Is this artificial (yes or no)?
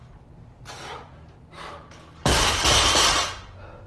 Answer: no